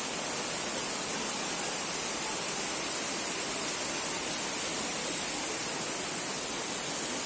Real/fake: real